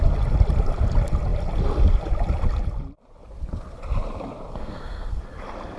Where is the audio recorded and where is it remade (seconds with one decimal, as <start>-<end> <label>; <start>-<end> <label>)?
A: 0.0-4.5 recorded; 4.5-5.2 remade; 5.2-5.8 recorded